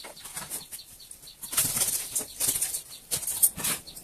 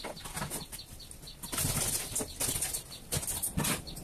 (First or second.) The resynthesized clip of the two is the first